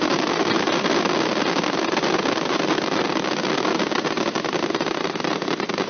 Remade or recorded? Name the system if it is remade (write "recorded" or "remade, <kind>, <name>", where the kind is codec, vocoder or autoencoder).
recorded